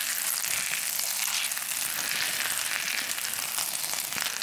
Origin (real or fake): real